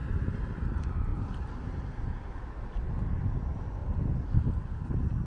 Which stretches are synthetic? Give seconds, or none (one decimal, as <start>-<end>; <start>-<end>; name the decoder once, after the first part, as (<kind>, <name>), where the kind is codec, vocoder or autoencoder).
1.1-2.1 (vocoder, BigVGAN v2)